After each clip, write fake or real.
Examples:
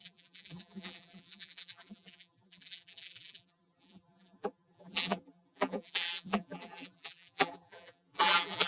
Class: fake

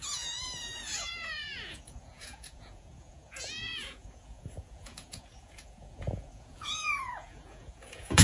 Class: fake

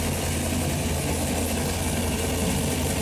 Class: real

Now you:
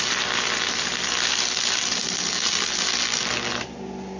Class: real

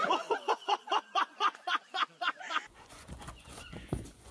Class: fake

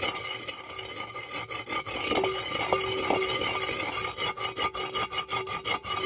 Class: real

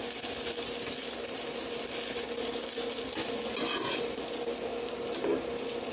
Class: real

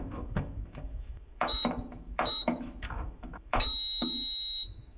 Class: fake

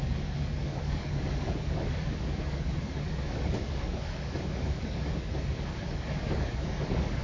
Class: fake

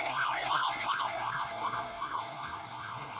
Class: fake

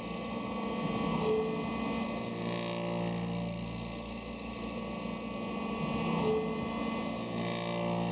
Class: real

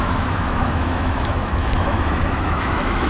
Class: fake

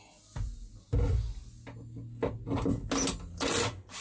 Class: real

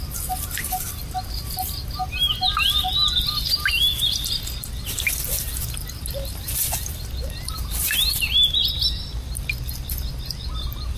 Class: real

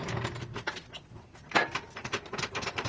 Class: real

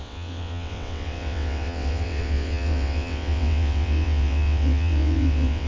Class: fake